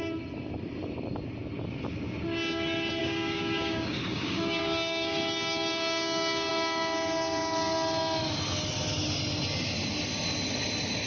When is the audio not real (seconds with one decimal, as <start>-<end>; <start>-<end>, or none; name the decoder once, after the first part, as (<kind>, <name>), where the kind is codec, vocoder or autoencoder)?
3.0-6.5 (codec, DAC)